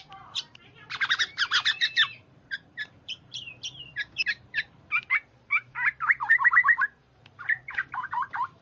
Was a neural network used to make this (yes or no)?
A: yes